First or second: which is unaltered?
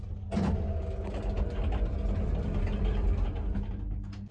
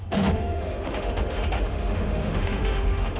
first